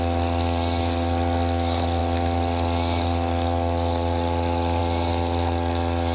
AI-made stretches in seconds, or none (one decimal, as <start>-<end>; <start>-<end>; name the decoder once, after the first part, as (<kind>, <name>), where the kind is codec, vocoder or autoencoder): none